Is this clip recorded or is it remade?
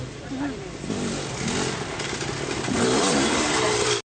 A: recorded